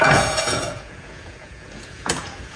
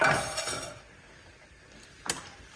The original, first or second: second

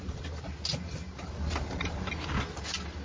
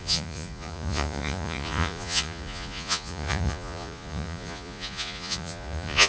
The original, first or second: first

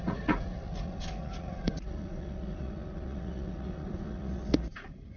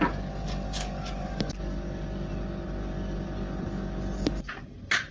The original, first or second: second